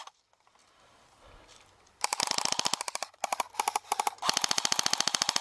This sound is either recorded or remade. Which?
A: recorded